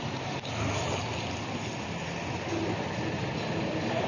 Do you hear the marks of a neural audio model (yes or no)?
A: no